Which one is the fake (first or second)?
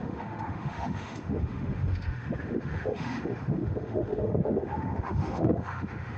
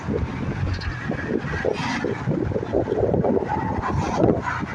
first